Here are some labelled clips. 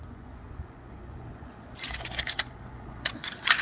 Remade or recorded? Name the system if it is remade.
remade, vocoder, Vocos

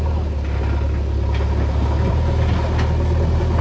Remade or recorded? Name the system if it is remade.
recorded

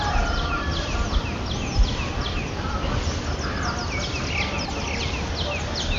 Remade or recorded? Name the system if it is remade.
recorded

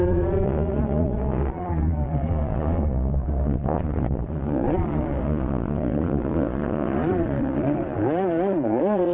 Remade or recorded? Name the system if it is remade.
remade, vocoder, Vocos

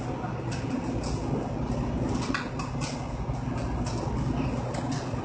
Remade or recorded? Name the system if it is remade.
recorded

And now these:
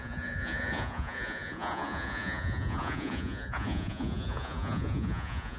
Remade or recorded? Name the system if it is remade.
remade, vocoder, Vocos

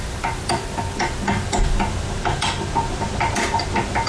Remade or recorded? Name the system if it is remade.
recorded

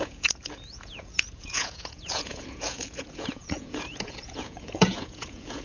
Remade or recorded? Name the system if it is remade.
remade, vocoder, Vocos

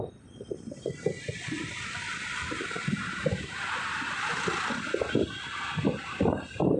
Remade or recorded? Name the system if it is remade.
recorded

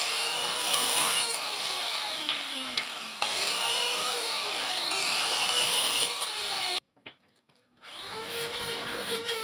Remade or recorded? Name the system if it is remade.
remade, codec, DAC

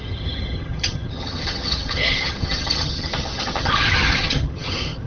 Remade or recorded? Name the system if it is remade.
remade, vocoder, HiFi-GAN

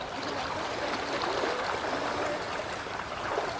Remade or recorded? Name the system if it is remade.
recorded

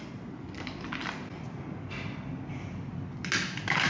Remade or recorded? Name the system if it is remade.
recorded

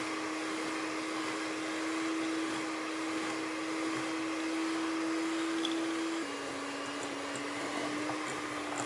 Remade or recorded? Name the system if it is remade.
recorded